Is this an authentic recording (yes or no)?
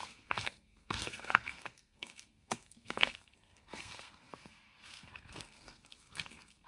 no